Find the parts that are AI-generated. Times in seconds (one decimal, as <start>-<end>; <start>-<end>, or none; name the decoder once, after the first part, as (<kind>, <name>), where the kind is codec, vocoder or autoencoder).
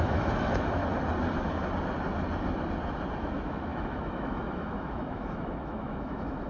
0.0-0.8 (autoencoder, DAC-VAE); 3.2-6.5